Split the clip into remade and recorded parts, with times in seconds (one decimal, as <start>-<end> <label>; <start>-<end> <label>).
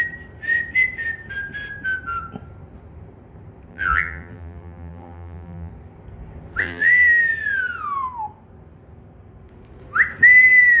0.0-3.7 recorded; 3.7-5.7 remade; 5.7-6.6 recorded; 6.6-7.2 remade; 7.2-10.8 recorded